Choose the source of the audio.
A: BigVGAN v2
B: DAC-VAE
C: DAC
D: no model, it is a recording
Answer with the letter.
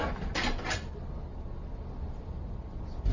D